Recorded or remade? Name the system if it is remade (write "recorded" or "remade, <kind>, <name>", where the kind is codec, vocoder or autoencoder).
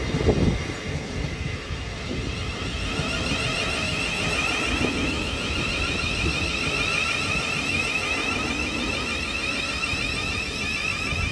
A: recorded